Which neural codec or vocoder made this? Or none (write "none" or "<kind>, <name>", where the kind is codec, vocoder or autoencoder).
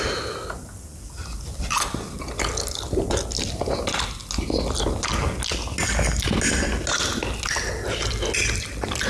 none